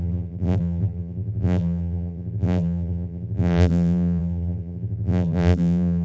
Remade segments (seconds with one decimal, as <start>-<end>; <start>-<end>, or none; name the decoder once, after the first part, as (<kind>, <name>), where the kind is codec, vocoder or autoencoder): 0.0-6.0 (vocoder, BigVGAN v2)